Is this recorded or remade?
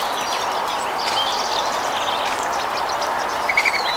recorded